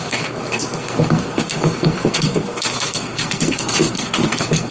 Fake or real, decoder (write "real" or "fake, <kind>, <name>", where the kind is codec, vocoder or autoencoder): fake, codec, SNAC